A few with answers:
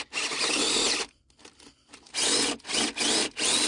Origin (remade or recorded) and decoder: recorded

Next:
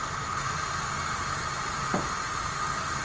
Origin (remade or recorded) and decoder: recorded